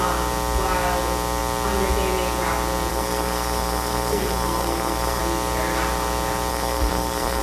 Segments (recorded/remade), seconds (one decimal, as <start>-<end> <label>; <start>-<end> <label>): 0.0-2.9 recorded; 2.9-5.2 remade; 5.2-6.5 recorded; 6.5-7.4 remade